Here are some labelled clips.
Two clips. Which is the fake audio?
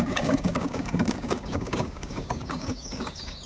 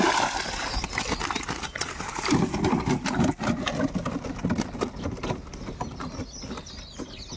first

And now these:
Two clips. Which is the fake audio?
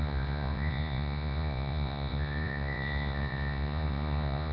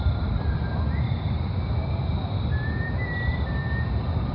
first